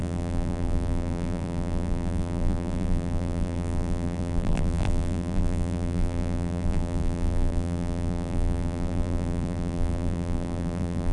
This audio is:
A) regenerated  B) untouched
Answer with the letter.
A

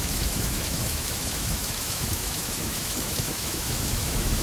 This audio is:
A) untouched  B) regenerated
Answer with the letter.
B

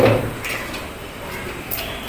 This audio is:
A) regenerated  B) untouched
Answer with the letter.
B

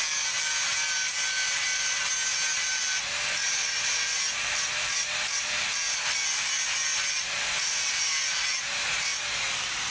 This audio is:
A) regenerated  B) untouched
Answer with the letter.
B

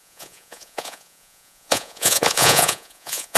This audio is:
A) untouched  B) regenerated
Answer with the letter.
B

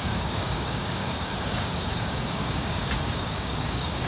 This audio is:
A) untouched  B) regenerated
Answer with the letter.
B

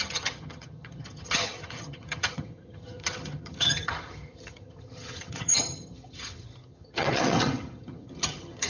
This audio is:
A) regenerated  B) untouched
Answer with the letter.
A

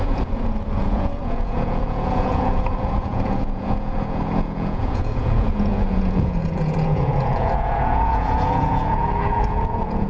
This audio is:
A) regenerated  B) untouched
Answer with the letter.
A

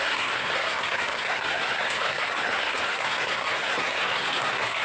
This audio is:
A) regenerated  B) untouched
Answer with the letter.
A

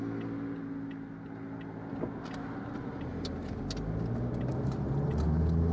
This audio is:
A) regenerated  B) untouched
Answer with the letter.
B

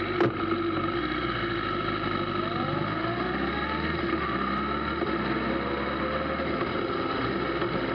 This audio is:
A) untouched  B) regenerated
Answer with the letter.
A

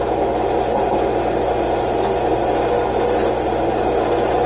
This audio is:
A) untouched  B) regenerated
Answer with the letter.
A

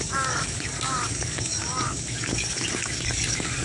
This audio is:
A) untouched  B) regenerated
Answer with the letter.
B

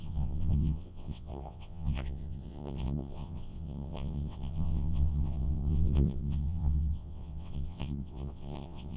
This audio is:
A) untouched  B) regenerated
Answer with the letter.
B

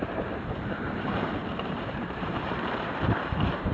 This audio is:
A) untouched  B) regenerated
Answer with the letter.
B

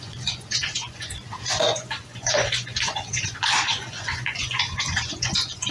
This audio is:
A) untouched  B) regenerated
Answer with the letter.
B